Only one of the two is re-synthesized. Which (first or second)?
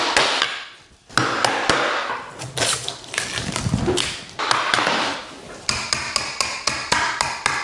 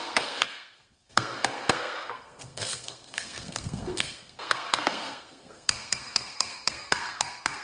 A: second